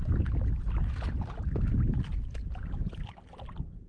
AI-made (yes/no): no